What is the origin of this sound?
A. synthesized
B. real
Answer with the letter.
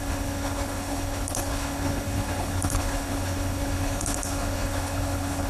A